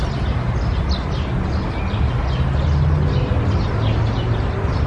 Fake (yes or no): no